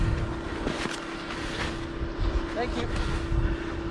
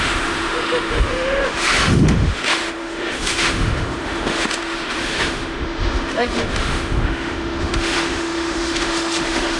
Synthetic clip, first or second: second